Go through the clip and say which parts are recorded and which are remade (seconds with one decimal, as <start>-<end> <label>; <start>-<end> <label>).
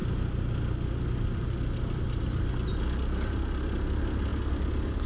0.0-5.1 recorded